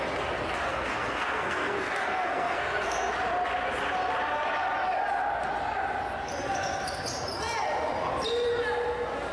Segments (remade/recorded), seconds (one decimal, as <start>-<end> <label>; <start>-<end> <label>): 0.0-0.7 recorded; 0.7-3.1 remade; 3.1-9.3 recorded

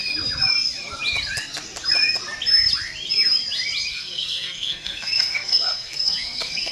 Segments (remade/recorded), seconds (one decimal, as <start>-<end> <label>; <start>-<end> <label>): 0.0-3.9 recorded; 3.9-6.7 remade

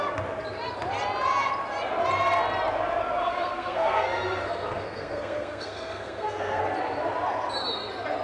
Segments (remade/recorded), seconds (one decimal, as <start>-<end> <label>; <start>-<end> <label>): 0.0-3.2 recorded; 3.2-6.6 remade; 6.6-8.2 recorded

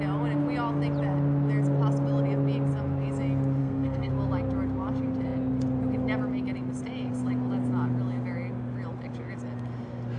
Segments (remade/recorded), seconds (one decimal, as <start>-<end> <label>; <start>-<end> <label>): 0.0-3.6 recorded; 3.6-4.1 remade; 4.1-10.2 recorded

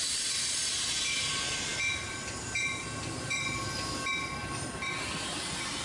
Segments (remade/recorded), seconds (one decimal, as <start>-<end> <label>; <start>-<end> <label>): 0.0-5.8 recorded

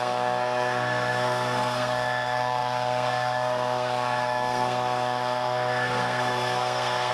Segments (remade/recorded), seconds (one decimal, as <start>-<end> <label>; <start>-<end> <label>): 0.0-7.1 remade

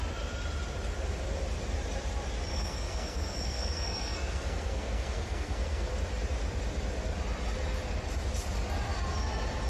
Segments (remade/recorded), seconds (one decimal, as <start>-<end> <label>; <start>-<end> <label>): 0.0-2.5 recorded; 2.5-5.9 remade; 5.9-9.7 recorded

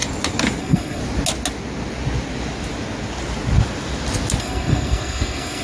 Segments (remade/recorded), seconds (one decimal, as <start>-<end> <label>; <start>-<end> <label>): 0.0-0.6 recorded; 0.6-1.0 remade; 1.0-4.4 recorded; 4.4-5.6 remade